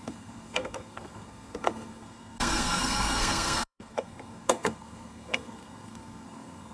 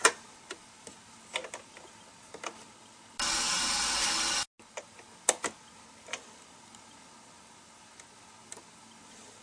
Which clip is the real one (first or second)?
second